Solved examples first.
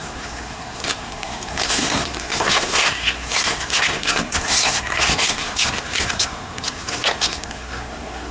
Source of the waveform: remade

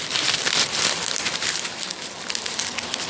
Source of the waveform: recorded